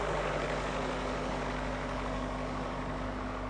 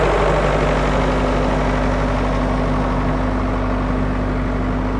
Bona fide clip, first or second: second